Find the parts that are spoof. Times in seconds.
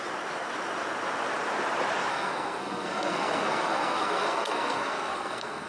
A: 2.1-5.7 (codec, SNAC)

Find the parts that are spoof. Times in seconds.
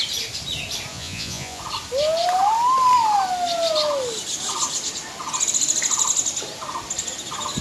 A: 0.9-1.6 (vocoder, Vocos)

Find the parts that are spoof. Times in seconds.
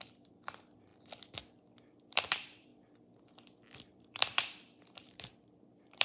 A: 0.0-0.9 (vocoder, BigVGAN v2); 2.1-2.7; 3.9-6.0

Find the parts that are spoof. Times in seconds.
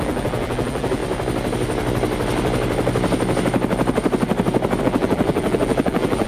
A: 0.0-1.0 (vocoder, BigVGAN v2); 4.8-6.3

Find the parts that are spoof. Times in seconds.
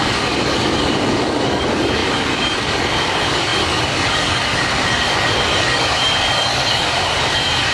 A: 0.0-7.7 (codec, DAC)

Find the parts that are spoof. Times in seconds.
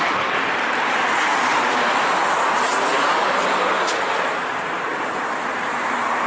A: none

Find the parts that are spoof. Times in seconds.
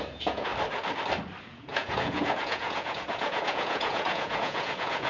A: 0.0-0.5 (vocoder, Vocos); 1.4-5.1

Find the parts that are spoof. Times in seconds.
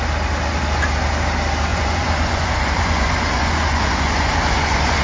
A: 1.7-5.0 (vocoder, Vocos)